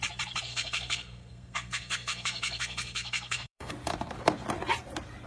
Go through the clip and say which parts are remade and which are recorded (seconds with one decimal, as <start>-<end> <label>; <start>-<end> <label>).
0.0-0.5 recorded; 0.5-3.7 remade; 3.7-5.3 recorded